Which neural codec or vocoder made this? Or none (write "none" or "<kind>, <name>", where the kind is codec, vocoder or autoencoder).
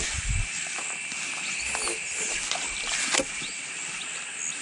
none